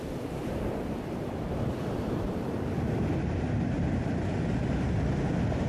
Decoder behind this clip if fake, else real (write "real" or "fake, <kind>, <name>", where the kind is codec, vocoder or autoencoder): fake, vocoder, BigVGAN v2